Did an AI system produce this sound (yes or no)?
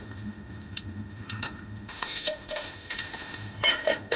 yes